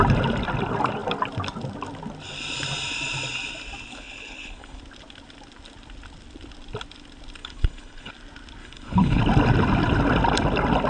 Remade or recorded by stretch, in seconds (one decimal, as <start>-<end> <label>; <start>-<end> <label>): 0.0-3.9 recorded; 3.9-4.8 remade; 4.8-7.4 recorded; 7.4-8.1 remade; 8.1-8.6 recorded; 8.6-9.2 remade; 9.2-10.9 recorded